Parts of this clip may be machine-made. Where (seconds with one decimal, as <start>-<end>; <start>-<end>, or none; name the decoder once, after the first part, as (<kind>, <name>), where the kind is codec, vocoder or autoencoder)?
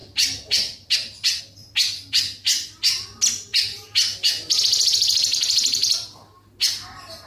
0.0-1.4 (vocoder, BigVGAN v2)